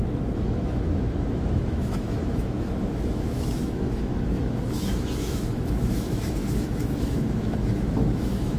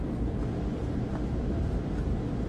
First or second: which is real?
second